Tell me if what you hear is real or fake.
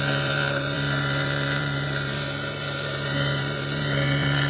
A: fake